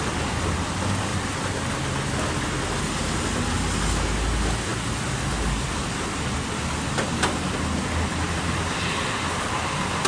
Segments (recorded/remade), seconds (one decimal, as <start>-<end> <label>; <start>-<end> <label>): 0.0-10.1 recorded